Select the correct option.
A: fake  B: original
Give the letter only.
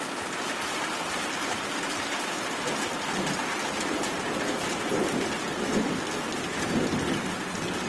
B